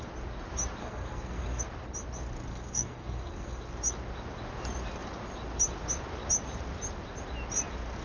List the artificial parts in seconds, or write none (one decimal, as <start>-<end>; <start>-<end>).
0.8-1.6; 2.5-3.6